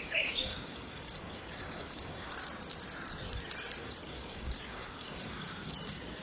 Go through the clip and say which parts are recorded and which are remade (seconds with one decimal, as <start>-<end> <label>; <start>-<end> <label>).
0.0-2.4 remade; 2.4-3.8 recorded; 3.8-6.2 remade